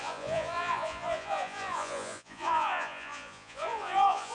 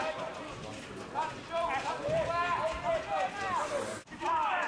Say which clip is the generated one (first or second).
first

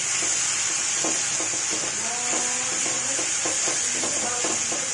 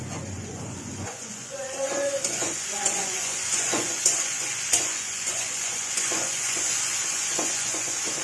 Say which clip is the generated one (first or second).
second